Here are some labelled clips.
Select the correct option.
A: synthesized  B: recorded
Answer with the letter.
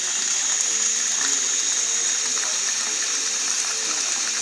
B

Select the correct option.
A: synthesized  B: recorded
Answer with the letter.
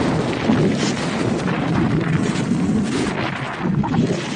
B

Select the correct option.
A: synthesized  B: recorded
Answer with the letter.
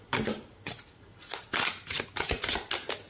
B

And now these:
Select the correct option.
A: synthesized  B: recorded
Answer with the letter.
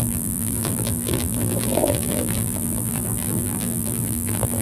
A